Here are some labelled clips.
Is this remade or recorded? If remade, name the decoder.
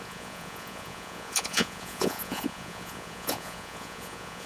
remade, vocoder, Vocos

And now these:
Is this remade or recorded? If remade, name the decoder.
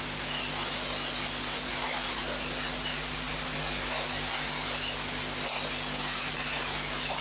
recorded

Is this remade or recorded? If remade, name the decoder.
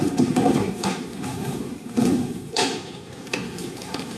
remade, codec, SNAC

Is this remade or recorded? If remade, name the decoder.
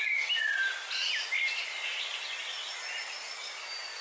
recorded